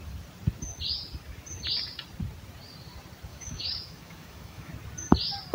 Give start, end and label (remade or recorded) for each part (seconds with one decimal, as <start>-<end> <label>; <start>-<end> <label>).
0.0-3.3 recorded; 3.3-4.7 remade; 4.7-5.5 recorded